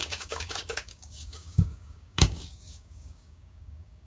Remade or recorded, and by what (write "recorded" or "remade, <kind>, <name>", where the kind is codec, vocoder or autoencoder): remade, codec, DAC